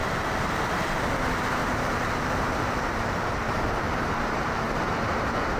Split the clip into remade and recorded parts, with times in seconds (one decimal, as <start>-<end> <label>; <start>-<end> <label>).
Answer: 0.0-0.6 remade; 0.6-1.6 recorded; 1.6-5.0 remade; 5.0-5.6 recorded